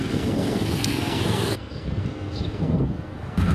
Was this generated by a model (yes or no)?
yes